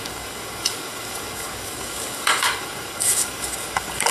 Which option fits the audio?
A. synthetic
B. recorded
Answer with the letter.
A